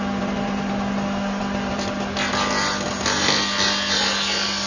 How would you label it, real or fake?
real